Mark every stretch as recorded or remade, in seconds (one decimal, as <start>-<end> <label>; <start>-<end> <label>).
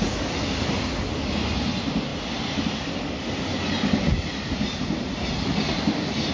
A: 0.0-6.3 recorded